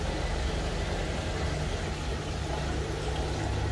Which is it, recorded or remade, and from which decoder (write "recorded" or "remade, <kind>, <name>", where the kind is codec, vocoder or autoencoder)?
recorded